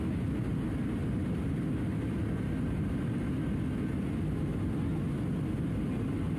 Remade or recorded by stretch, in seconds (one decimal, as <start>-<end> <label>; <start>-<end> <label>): 0.0-6.4 recorded